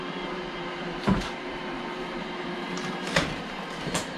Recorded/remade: remade